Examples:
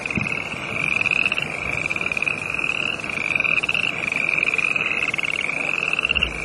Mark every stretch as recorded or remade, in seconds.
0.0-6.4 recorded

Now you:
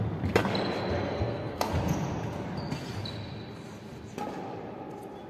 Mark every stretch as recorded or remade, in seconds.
0.0-1.1 recorded; 1.1-1.7 remade; 1.7-5.3 recorded

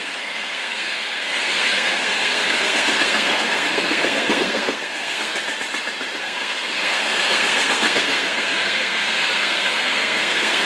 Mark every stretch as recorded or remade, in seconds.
0.0-5.3 remade; 5.3-6.2 recorded; 6.2-10.7 remade

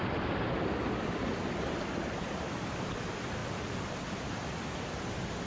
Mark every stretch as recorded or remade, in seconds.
0.0-5.5 recorded

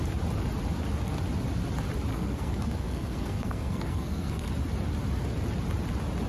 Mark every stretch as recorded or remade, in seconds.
0.0-2.1 recorded; 2.1-4.5 remade; 4.5-6.3 recorded

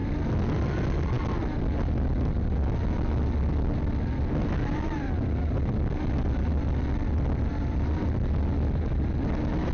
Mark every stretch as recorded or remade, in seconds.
0.0-9.7 recorded